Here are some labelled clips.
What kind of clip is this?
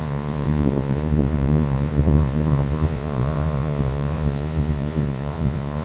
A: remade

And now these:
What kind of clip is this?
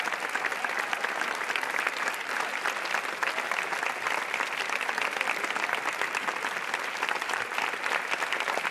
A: recorded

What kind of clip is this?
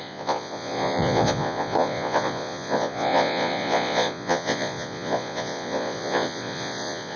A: remade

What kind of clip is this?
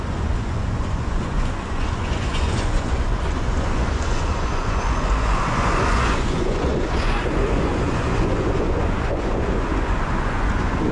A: remade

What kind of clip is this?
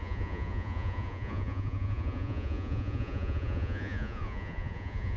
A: remade